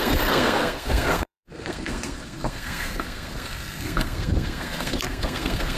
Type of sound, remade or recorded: remade